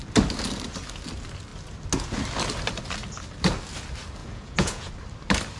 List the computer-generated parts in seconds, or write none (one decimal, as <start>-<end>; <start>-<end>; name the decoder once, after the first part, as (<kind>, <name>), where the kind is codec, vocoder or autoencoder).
4.2-4.9 (vocoder, Vocos)